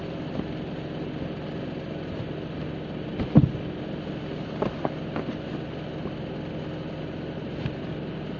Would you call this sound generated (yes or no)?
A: no